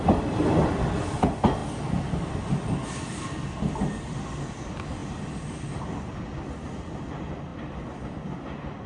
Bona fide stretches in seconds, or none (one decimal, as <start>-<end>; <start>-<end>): 0.0-8.9